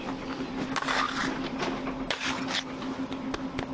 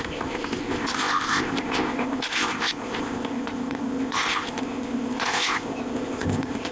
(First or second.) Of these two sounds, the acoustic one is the first